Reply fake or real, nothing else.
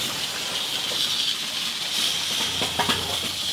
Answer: real